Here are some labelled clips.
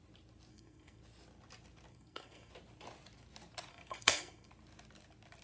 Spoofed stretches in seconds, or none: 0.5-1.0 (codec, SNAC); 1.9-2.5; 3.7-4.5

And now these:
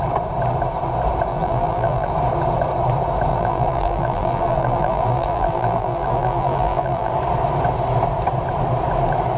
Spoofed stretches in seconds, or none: 1.3-2.1 (vocoder, BigVGAN v2); 3.3-7.1

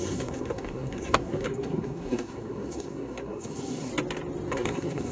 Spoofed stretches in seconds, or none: 0.0-3.9 (codec, SNAC); 4.5-5.1

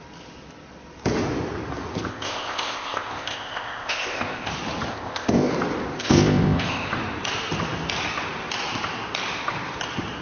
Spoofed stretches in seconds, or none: 2.1-4.5 (codec, ZipCodec); 4.9-5.5; 6.0-6.9

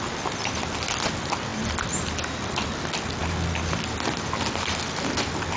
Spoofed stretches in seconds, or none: none

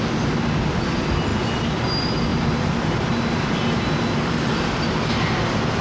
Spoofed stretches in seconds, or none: none